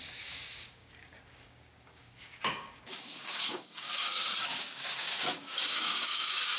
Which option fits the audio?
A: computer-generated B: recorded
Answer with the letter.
A